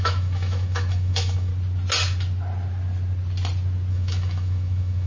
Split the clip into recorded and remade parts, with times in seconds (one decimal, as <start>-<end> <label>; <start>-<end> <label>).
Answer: 0.0-1.5 remade; 1.5-3.9 recorded; 3.9-5.1 remade